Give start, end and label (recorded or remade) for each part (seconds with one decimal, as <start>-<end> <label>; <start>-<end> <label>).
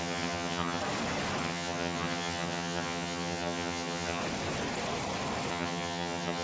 0.0-0.8 remade; 0.8-1.4 recorded; 1.4-4.2 remade; 4.2-5.5 recorded; 5.5-6.4 remade